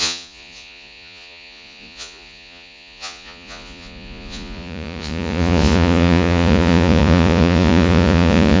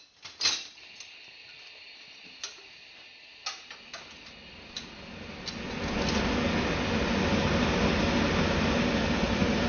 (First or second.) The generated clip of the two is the first